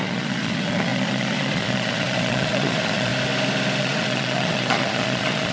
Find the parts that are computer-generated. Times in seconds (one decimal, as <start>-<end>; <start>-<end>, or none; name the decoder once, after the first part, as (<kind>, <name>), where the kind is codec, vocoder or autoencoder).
0.0-3.1 (vocoder, Vocos); 3.8-5.5